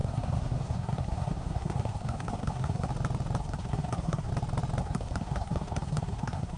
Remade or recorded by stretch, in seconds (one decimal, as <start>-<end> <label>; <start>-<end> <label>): 0.0-2.9 remade; 2.9-3.4 recorded; 3.4-4.3 remade; 4.3-4.8 recorded; 4.8-6.6 remade